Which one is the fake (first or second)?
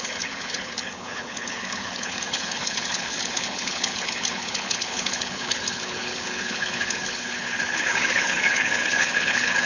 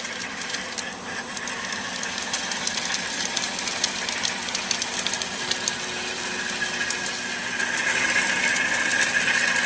first